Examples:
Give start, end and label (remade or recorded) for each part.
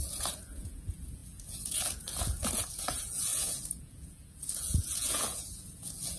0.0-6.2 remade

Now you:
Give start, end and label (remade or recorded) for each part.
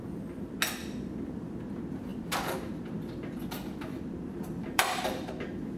0.0-0.8 recorded; 0.8-1.6 remade; 1.6-2.1 recorded; 2.1-5.3 remade; 5.3-5.8 recorded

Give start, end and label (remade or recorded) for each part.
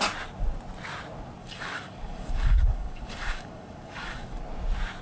0.0-1.4 recorded; 1.4-4.4 remade; 4.4-5.0 recorded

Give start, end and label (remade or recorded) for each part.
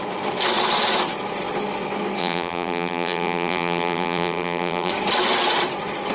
0.0-2.2 recorded; 2.2-4.9 remade; 4.9-6.1 recorded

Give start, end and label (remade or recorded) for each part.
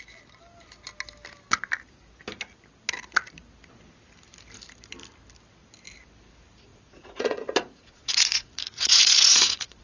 0.0-6.7 recorded; 6.7-9.8 remade